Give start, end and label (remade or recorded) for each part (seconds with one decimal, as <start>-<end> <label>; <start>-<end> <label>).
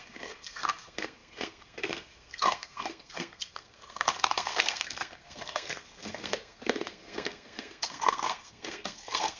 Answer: 0.0-9.4 remade